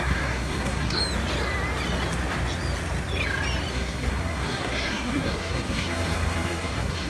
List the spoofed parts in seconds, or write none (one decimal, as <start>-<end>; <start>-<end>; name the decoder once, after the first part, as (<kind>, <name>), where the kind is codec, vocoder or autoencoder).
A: 0.0-1.0 (codec, SNAC); 3.7-7.1